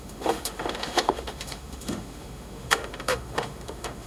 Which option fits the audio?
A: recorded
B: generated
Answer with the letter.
B